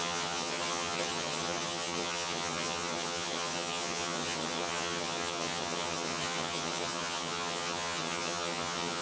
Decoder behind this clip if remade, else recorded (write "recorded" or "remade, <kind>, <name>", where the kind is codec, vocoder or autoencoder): remade, vocoder, HiFi-GAN